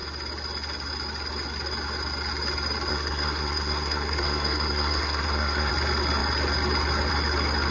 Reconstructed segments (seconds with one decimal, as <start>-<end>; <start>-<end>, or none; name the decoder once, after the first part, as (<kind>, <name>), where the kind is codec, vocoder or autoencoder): 2.9-5.7 (codec, SNAC)